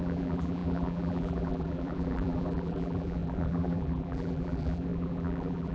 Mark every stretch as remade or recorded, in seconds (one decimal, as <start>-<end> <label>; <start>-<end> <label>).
0.0-5.7 remade